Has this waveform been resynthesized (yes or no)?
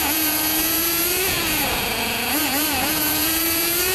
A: yes